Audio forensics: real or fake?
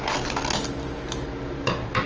real